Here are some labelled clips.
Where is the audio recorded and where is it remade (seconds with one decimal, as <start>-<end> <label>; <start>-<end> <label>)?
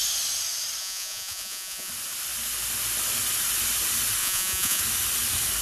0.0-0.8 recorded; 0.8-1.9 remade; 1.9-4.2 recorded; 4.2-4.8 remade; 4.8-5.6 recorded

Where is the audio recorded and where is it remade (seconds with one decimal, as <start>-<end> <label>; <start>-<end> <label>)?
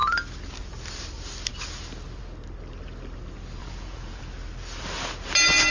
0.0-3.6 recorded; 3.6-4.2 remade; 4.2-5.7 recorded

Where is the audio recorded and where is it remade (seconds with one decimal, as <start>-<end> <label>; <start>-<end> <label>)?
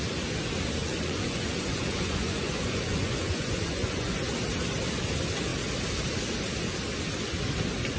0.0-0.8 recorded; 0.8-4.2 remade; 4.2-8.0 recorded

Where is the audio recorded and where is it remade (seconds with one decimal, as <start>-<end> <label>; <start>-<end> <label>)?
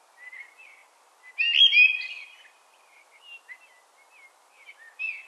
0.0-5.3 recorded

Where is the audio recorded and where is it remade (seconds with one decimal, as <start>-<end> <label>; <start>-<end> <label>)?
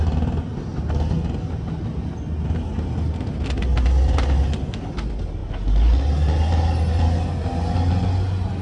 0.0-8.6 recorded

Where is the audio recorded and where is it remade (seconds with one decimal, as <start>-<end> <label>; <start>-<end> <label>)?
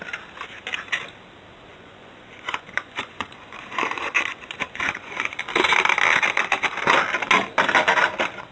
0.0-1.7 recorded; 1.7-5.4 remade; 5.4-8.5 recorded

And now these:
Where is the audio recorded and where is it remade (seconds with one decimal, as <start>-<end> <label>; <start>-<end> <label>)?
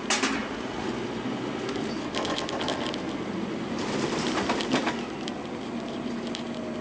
0.0-0.4 recorded; 0.4-0.9 remade; 0.9-6.8 recorded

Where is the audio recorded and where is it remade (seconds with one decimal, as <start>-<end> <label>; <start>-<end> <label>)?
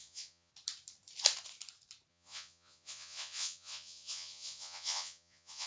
0.0-0.5 remade; 0.5-2.1 recorded; 2.1-5.7 remade